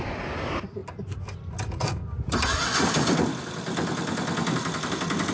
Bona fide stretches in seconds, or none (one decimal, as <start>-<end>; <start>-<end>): 0.8-1.5; 2.0-2.6